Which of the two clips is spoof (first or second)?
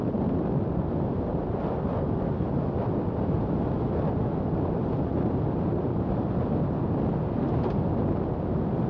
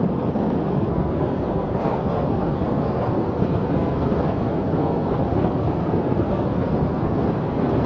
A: second